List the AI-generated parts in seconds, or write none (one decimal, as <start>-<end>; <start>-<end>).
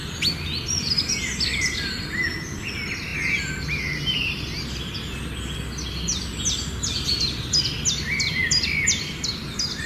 none